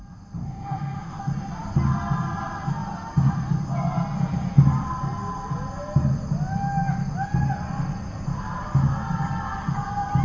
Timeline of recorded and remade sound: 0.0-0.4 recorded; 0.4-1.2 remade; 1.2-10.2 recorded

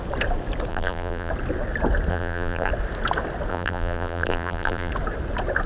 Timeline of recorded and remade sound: 0.0-0.7 recorded; 0.7-1.3 remade; 1.3-2.1 recorded; 2.1-2.7 remade; 2.7-3.5 recorded; 3.5-4.9 remade; 4.9-5.7 recorded

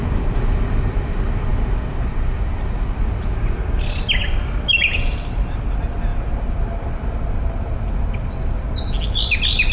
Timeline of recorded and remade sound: 0.0-9.7 recorded

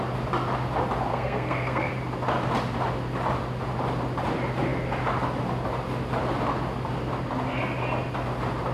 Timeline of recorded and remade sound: 0.0-1.1 recorded; 1.1-1.9 remade; 1.9-8.7 recorded

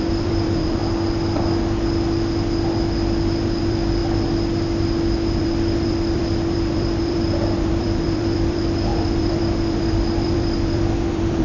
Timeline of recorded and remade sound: 0.0-0.8 remade; 0.8-3.6 recorded; 3.6-4.0 remade; 4.0-5.4 recorded; 5.4-11.4 remade

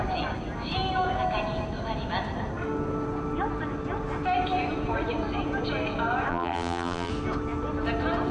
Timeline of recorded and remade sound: 0.0-6.3 recorded; 6.3-7.1 remade; 7.1-8.3 recorded